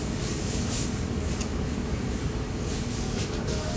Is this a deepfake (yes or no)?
yes